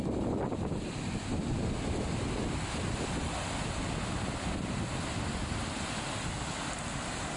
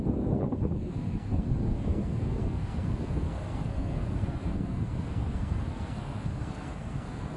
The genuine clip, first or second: first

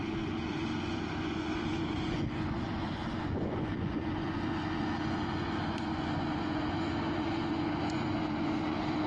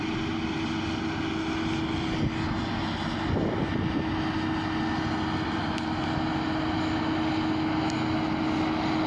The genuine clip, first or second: second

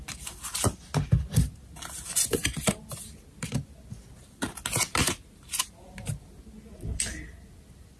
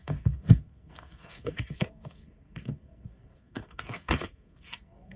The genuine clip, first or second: first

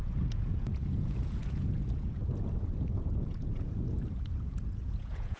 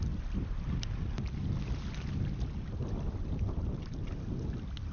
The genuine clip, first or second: second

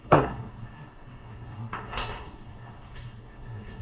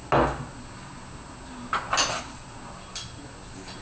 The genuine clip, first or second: second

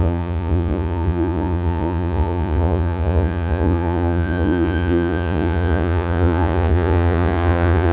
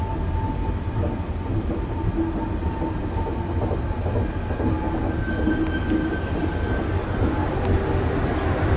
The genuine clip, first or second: second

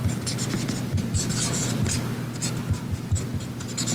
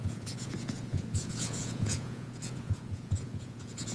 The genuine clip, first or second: first